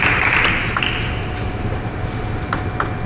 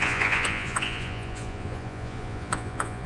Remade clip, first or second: second